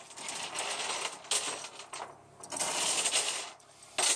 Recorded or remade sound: recorded